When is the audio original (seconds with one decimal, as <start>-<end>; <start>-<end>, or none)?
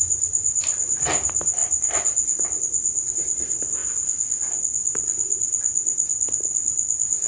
0.0-7.3